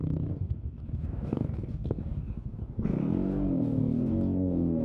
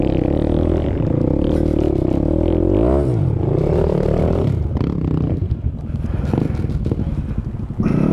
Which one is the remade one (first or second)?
first